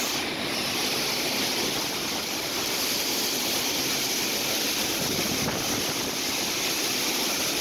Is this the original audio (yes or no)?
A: yes